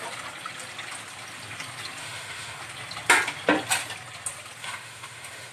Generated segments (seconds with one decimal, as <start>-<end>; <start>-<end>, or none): 2.0-2.6; 4.6-5.5